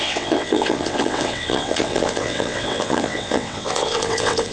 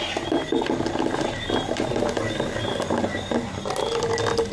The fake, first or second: first